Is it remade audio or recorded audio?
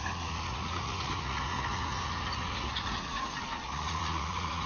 remade